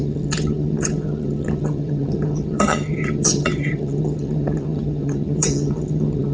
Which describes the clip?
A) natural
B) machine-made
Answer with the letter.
B